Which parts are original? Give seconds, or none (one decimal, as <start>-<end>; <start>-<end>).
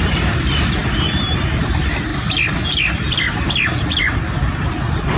0.0-5.2